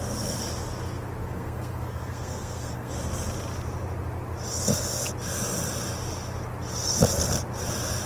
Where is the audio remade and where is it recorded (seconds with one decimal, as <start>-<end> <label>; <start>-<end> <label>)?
0.0-1.2 recorded; 1.2-2.9 remade; 2.9-8.1 recorded